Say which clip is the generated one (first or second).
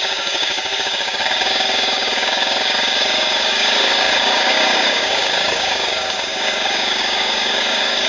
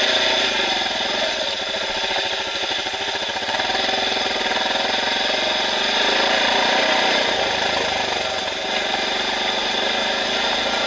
first